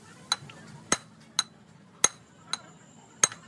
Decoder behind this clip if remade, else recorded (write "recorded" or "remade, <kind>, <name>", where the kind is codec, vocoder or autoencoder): recorded